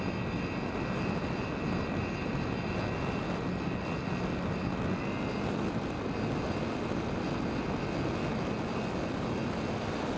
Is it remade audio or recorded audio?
recorded